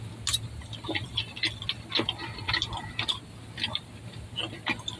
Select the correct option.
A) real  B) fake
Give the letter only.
A